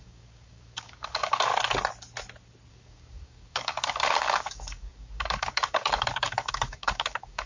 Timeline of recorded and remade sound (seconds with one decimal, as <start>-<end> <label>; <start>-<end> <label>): 0.0-1.5 remade; 1.5-2.7 recorded; 2.7-7.5 remade